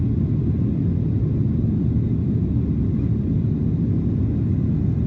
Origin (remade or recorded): recorded